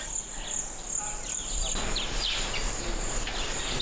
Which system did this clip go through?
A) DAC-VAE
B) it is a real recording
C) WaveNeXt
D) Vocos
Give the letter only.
B